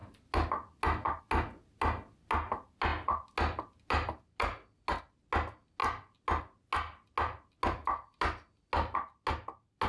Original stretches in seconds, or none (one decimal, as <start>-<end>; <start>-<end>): 0.0-9.9